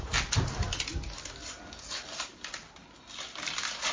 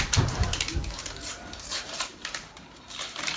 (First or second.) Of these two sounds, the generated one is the second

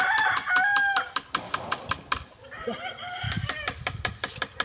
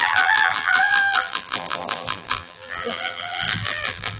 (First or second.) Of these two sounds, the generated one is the second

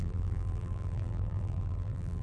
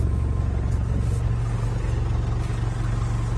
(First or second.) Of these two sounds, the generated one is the first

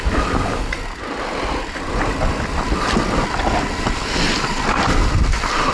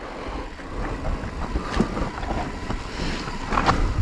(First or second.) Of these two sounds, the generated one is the first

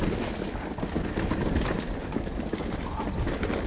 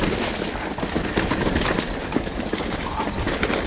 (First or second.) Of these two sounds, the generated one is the second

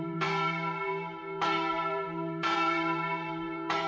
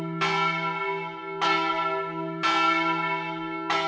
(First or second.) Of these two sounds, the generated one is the first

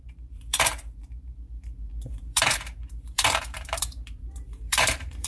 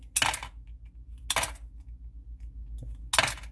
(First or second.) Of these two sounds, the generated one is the first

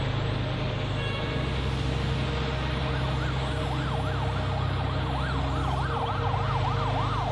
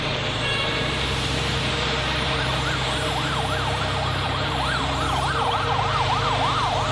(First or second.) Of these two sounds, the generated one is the second